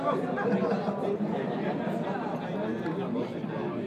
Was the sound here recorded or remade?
recorded